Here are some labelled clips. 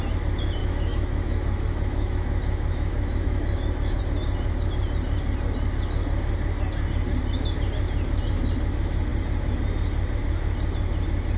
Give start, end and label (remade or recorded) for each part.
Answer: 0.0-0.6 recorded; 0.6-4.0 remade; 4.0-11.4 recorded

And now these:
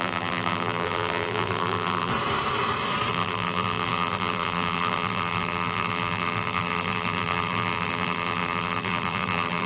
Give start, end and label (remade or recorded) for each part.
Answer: 0.0-2.1 remade; 2.1-3.1 recorded; 3.1-9.7 remade

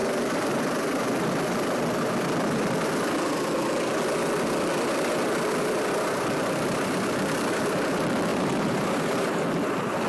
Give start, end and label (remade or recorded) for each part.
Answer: 0.0-8.3 recorded; 8.3-9.4 remade; 9.4-10.1 recorded

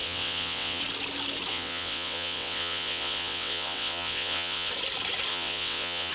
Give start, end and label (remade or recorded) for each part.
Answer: 0.0-0.8 remade; 0.8-1.5 recorded; 1.5-4.7 remade; 4.7-5.3 recorded; 5.3-6.1 remade